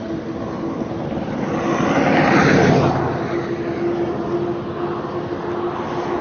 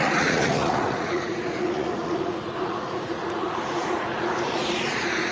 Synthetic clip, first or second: second